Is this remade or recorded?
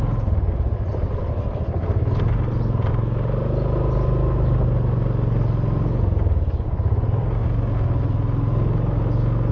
recorded